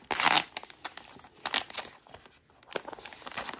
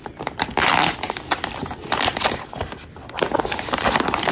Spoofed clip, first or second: second